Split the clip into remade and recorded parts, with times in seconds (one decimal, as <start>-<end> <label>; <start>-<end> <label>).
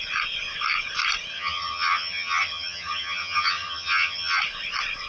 0.0-1.3 recorded; 1.3-4.4 remade; 4.4-5.1 recorded